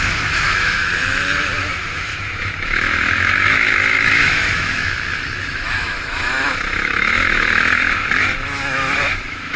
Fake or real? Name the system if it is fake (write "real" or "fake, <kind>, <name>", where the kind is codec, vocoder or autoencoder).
fake, autoencoder, DAC-VAE